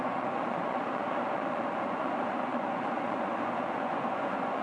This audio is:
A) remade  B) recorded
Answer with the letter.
A